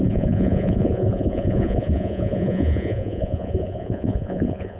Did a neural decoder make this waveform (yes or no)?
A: yes